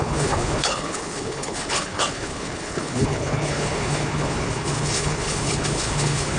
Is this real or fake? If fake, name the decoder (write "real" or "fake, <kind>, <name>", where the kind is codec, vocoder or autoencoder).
fake, codec, HILCodec